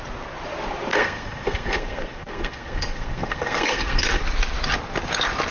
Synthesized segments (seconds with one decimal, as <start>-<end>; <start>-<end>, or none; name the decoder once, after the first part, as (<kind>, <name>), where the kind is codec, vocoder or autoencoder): 0.9-4.2 (codec, SNAC)